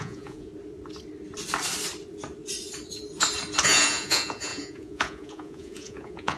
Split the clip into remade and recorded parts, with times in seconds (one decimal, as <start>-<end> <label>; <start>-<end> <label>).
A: 0.0-0.5 remade; 0.5-3.6 recorded; 3.6-6.4 remade